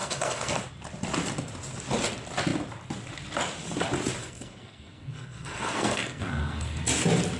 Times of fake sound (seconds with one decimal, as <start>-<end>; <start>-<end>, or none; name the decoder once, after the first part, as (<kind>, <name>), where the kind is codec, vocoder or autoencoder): 0.0-0.6 (codec, SNAC); 4.2-6.8